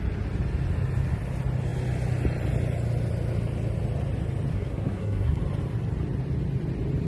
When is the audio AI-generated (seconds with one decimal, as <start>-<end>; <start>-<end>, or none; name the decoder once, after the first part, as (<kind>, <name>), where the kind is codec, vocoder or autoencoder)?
4.5-5.4 (codec, SNAC)